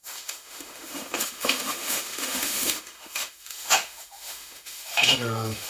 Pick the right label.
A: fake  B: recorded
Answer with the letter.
A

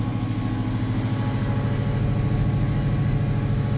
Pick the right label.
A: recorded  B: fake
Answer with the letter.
A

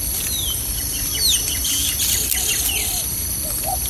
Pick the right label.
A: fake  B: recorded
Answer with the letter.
B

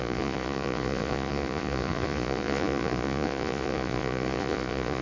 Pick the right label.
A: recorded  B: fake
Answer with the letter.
B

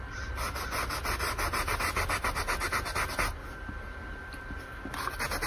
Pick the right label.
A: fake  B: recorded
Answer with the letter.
B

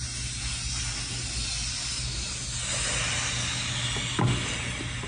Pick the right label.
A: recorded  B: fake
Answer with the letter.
A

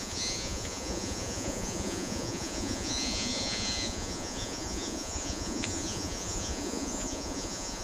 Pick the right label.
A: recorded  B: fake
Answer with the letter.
B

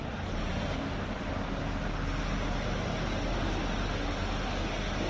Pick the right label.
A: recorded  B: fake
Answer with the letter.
A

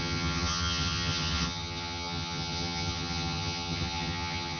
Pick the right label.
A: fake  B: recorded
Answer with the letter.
A